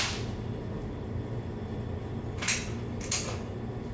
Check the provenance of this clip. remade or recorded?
recorded